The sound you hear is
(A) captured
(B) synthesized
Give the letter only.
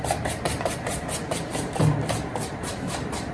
B